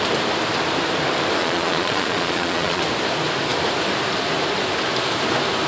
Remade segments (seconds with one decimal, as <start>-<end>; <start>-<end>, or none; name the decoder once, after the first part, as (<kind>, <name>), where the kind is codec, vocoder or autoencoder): 1.4-2.8 (vocoder, Vocos)